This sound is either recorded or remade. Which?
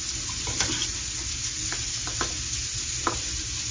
recorded